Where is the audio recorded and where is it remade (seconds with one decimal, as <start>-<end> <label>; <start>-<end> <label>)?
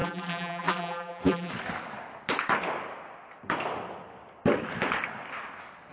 0.0-1.5 remade; 1.5-5.9 recorded